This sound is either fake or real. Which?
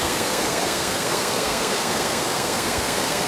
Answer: fake